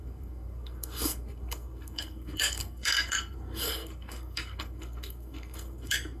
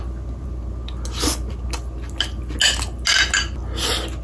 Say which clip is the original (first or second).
second